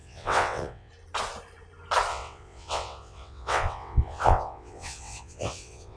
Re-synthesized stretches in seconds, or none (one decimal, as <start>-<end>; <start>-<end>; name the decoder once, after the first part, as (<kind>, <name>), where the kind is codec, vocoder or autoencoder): 0.0-0.9 (vocoder, WaveNeXt); 2.1-6.0